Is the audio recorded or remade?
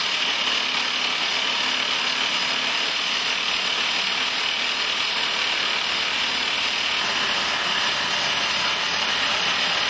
recorded